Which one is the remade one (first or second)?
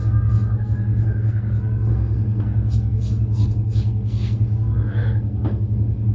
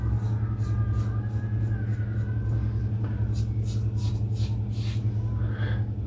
first